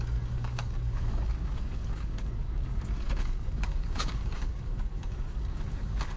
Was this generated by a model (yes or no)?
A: yes